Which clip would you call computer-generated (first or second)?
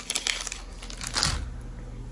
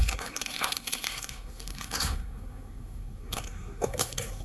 second